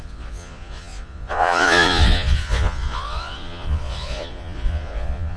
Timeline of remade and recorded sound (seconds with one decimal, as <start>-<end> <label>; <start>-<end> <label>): 0.0-5.4 remade